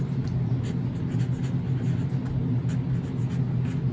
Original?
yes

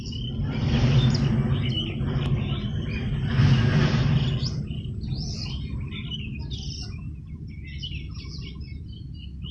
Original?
yes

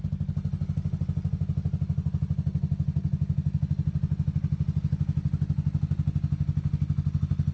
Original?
yes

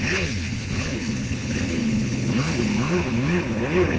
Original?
no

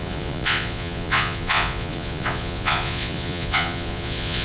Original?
no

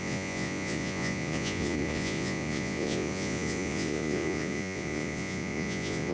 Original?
no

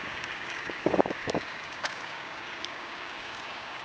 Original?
no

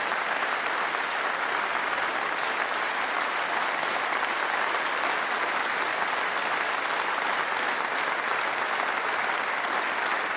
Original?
yes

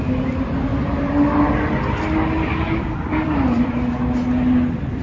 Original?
yes